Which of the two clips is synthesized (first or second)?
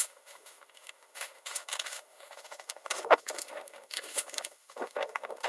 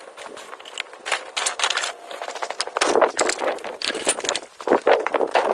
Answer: first